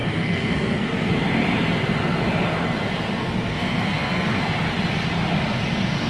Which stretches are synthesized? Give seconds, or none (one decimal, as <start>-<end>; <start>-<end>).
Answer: 0.0-1.1; 3.2-4.4